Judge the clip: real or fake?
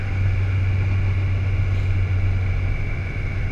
real